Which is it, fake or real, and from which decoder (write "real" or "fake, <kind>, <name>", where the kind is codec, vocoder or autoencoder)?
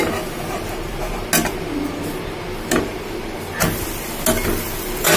real